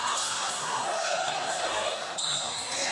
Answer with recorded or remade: remade